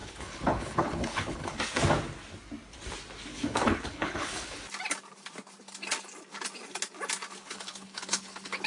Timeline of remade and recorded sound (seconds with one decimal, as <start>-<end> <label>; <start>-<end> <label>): 0.0-1.6 remade; 1.6-3.3 recorded; 3.3-4.6 remade; 4.6-7.4 recorded; 7.4-8.7 remade